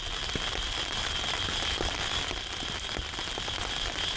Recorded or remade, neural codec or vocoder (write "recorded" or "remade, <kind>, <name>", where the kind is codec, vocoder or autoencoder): recorded